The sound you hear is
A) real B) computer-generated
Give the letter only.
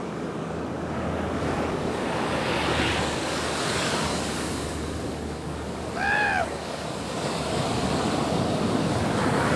B